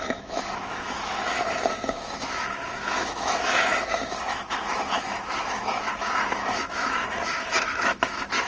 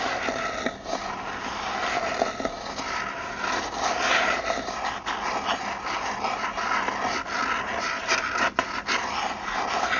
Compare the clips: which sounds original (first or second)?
second